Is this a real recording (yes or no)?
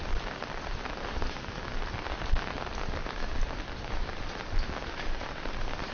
yes